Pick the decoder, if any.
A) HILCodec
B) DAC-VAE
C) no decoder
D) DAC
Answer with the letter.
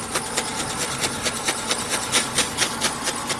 C